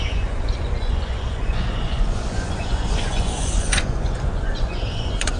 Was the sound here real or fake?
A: fake